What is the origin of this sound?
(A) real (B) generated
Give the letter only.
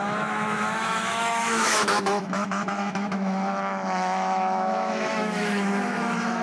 B